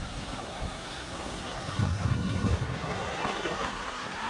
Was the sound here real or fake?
fake